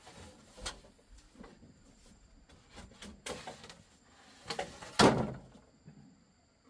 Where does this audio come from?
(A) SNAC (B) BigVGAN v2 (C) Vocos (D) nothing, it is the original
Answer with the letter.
D